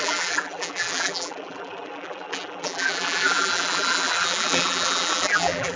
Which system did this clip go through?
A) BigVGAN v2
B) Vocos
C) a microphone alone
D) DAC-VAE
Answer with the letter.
A